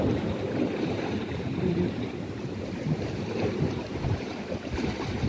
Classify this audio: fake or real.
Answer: fake